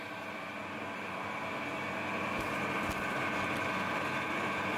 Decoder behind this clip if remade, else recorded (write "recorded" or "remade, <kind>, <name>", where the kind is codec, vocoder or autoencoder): recorded